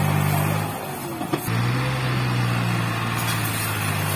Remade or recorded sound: recorded